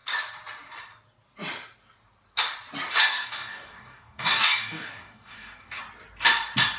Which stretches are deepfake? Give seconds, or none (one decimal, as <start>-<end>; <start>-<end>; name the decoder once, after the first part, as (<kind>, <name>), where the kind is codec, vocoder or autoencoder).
3.1-5.8 (codec, DAC)